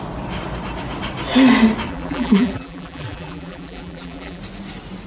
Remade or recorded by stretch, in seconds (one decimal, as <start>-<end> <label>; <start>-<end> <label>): 0.0-1.9 recorded; 1.9-4.4 remade; 4.4-5.1 recorded